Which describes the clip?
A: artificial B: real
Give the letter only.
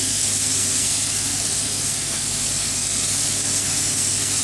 A